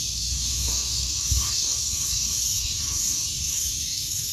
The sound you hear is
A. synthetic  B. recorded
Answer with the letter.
A